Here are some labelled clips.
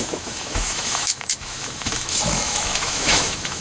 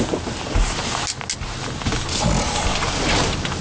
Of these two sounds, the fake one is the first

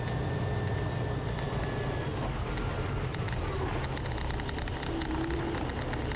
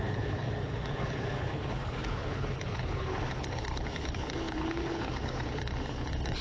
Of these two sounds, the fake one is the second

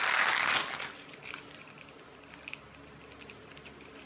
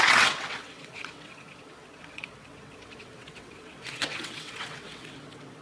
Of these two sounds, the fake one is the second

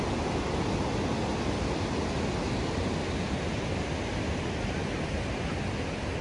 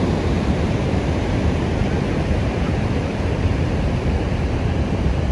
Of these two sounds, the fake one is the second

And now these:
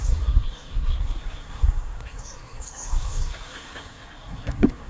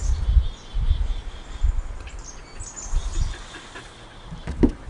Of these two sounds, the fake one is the first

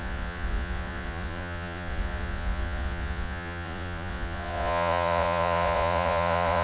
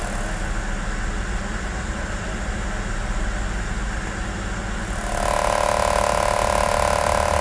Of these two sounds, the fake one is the first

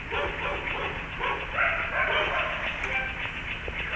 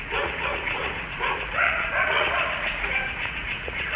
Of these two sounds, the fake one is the second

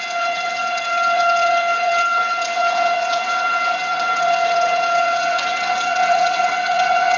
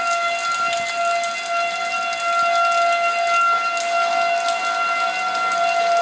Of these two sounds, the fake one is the first